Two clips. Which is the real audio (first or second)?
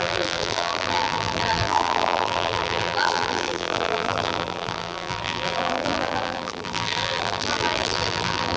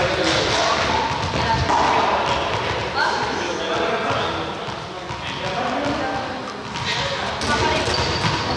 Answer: second